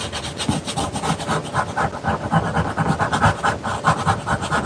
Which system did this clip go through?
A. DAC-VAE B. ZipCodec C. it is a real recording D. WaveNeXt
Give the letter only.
C